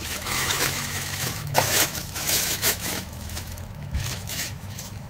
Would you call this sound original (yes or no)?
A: no